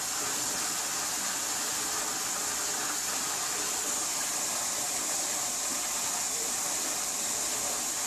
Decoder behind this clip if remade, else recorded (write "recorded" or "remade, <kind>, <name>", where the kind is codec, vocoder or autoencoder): recorded